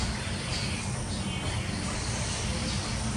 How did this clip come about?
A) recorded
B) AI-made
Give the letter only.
A